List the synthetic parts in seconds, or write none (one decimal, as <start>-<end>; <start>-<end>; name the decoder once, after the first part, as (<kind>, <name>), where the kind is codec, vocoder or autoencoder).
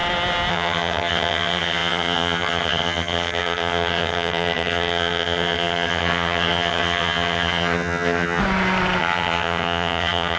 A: 0.5-8.4 (vocoder, HiFi-GAN); 9.0-10.4